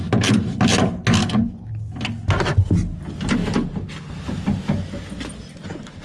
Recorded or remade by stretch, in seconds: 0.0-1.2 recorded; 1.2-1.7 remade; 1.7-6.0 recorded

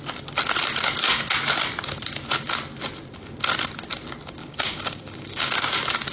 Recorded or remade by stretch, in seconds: 0.0-4.4 recorded; 4.4-5.5 remade; 5.5-6.1 recorded

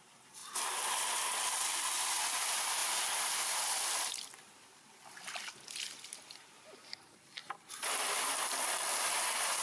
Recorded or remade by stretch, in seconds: 0.0-0.4 remade; 0.4-1.6 recorded; 1.6-9.6 remade

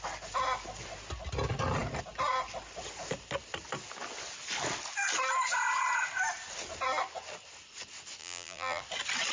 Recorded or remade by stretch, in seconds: 0.0-8.2 recorded; 8.2-8.8 remade; 8.8-9.3 recorded

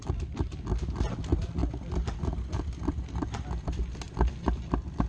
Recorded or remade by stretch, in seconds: 0.0-5.1 recorded

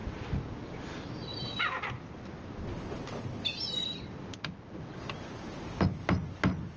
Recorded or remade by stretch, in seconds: 0.0-6.8 recorded

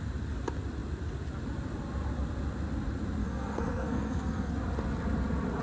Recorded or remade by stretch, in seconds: 0.0-3.2 recorded; 3.2-4.5 remade; 4.5-5.6 recorded

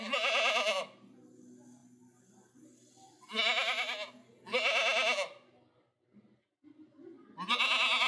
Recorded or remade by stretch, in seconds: 0.0-8.1 recorded